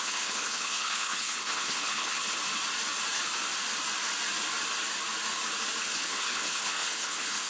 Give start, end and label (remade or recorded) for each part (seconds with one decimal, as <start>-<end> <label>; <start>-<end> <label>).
0.0-2.4 remade; 2.4-5.8 recorded; 5.8-7.5 remade